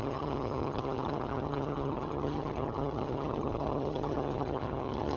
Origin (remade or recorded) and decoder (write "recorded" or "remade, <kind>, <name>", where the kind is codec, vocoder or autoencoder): remade, vocoder, HiFi-GAN